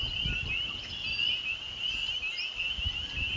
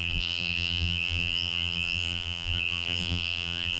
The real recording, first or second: first